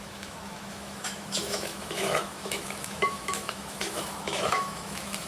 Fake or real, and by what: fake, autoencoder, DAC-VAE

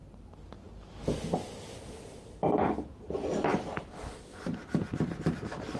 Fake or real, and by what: real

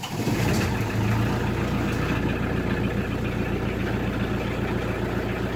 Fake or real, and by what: real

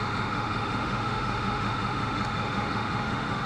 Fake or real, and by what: fake, autoencoder, DAC-VAE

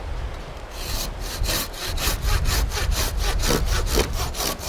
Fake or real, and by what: real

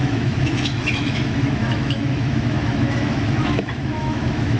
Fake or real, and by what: fake, autoencoder, DAC-VAE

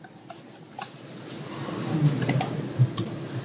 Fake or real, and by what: real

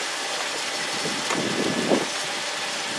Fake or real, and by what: real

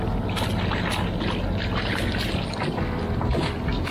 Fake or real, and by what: real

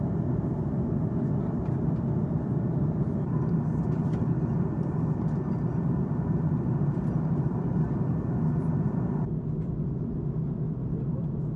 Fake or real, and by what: real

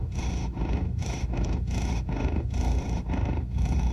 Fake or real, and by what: fake, autoencoder, DAC-VAE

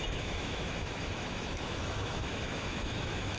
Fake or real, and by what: fake, autoencoder, DAC-VAE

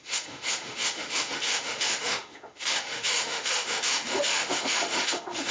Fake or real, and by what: fake, autoencoder, DAC-VAE